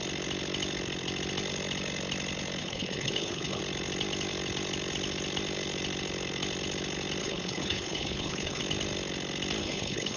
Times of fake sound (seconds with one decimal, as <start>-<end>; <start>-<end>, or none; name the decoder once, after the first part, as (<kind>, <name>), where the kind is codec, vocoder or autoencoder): 2.6-3.6 (codec, HILCodec); 7.2-8.6; 9.6-10.2